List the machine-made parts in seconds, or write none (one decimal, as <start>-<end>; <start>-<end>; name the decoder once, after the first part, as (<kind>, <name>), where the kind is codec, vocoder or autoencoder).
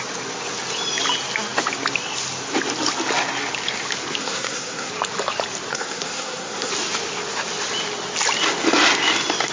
4.2-4.9 (codec, SNAC); 5.7-6.7